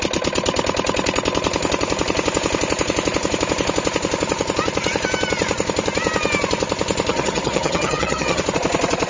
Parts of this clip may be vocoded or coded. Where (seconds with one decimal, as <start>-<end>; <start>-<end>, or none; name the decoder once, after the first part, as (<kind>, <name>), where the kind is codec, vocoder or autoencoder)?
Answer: 7.1-8.4 (vocoder, HiFi-GAN)

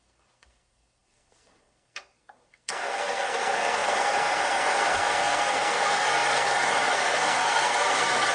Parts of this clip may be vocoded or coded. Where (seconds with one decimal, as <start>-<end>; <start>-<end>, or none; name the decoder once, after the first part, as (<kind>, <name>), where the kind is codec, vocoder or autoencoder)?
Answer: 0.0-8.3 (codec, SNAC)

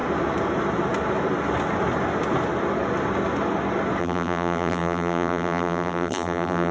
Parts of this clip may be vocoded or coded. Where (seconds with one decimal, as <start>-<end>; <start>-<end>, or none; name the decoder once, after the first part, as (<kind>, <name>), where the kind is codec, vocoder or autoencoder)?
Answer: 4.0-6.7 (vocoder, BigVGAN v2)

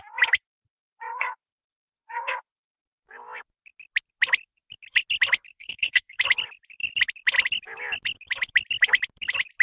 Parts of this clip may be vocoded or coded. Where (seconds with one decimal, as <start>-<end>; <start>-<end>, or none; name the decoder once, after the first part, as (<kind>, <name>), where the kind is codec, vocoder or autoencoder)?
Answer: 1.1-2.5 (codec, SNAC); 5.5-6.2